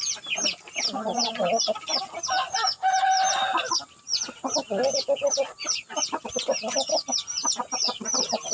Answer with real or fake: real